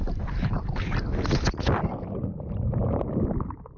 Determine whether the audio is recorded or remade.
recorded